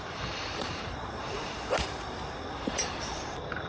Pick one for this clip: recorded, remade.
remade